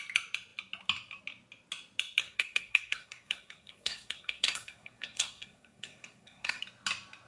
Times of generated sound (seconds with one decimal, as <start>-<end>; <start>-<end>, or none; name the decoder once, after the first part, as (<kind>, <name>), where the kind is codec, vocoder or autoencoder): 2.2-6.6 (codec, SNAC)